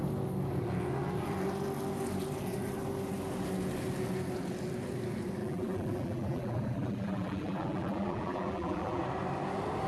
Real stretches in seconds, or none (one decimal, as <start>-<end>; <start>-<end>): 0.0-5.4; 9.0-9.9